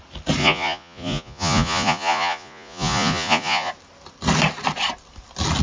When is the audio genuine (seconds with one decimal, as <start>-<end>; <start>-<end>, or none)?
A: 0.0-0.4; 3.7-5.6